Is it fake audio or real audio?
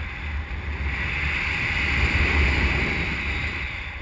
real